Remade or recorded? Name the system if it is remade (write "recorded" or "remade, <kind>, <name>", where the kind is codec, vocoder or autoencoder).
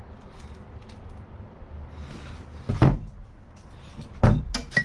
recorded